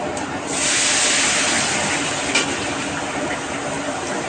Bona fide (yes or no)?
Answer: yes